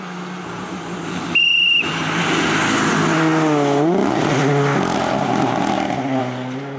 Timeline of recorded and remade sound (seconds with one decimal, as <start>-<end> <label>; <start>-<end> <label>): 0.0-6.8 recorded